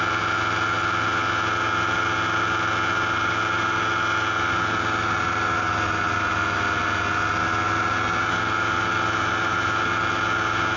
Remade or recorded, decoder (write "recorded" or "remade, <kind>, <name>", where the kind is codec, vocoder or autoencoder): recorded